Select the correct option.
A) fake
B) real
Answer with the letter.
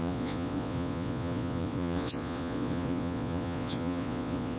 A